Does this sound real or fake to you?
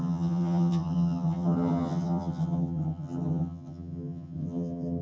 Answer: fake